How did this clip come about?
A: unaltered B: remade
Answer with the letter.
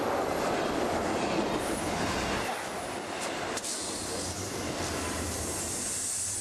A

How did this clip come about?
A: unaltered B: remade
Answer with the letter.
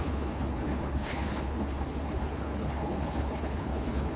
B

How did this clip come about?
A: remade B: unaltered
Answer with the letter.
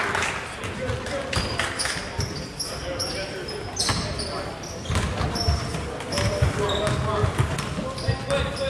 B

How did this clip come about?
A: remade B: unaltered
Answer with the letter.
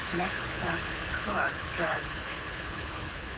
A